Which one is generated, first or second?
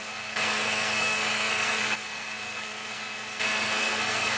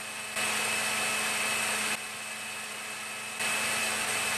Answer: first